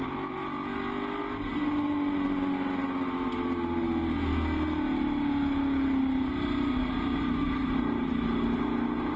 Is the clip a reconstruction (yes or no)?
no